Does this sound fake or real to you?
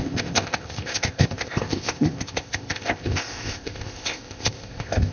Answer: fake